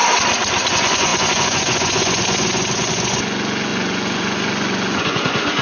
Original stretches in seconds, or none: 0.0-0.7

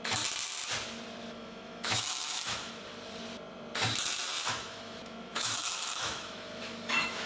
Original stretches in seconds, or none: 0.0-1.2; 2.7-4.4

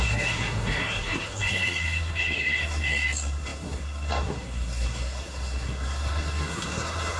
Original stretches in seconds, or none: none

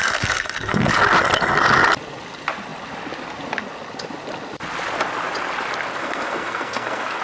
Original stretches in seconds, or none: 1.0-5.9

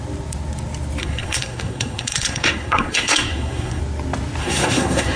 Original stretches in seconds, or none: 0.0-1.0; 3.8-4.4